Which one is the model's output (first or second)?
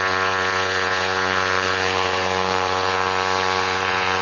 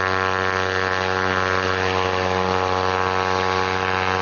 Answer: first